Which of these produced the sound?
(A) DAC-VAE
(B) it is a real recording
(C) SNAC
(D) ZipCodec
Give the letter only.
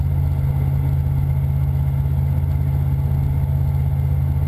B